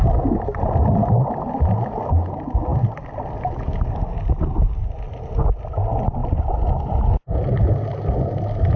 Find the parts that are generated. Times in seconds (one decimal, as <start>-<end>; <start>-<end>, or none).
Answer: none